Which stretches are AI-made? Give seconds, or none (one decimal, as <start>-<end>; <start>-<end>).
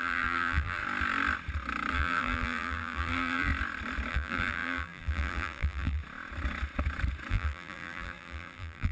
0.0-0.8; 1.9-3.5; 4.1-6.0; 7.3-8.9